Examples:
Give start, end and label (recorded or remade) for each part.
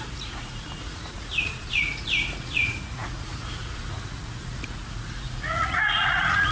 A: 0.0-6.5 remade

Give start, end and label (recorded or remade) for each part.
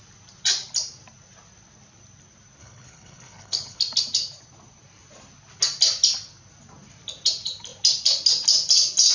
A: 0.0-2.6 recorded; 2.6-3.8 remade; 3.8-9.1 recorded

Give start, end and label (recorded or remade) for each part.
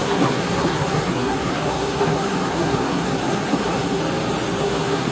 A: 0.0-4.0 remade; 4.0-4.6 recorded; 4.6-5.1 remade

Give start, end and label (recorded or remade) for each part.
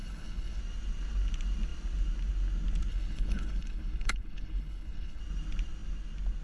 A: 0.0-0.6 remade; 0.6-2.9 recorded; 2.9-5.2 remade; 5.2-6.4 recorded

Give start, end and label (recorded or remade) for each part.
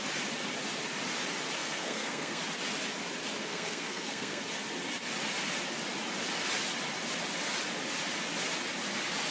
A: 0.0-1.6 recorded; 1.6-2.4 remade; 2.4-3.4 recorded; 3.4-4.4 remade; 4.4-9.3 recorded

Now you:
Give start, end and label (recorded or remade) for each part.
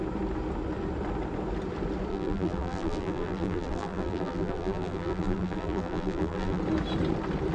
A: 0.0-2.1 recorded; 2.1-6.6 remade; 6.6-7.5 recorded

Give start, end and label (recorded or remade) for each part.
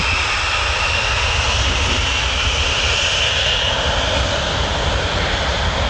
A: 0.0-5.9 recorded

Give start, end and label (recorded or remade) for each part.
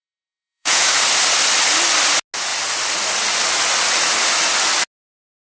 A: 0.0-0.9 remade; 0.9-5.4 recorded